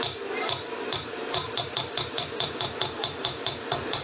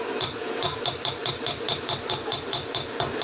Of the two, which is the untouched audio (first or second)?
second